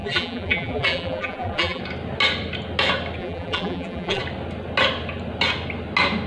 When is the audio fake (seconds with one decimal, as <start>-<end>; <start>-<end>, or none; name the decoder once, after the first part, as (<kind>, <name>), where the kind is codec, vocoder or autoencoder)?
0.0-1.8 (vocoder, BigVGAN v2); 3.2-4.2